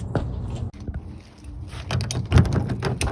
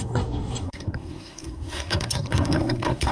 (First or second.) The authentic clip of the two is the first